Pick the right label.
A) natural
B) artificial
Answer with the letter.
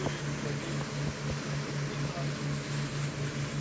A